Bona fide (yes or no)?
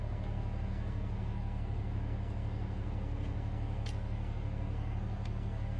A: no